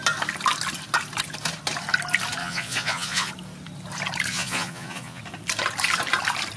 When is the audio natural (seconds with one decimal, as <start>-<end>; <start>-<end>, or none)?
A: 0.0-2.4; 3.3-4.3; 5.2-6.6